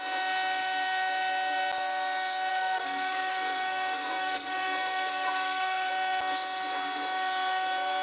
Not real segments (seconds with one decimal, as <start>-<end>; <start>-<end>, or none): 2.5-5.9